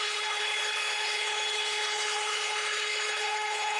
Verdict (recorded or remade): remade